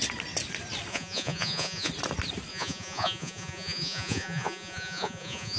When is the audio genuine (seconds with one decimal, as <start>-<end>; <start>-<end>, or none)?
0.0-0.9; 1.9-2.5